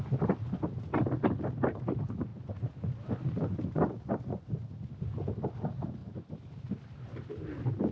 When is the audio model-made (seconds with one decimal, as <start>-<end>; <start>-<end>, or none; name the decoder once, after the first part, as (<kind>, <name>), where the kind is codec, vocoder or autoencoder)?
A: none